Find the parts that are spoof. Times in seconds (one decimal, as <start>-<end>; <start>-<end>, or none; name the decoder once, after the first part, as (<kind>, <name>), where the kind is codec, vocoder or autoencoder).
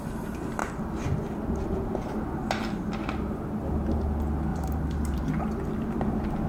4.5-5.3 (vocoder, BigVGAN v2)